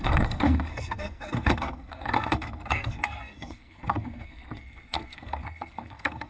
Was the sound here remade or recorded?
remade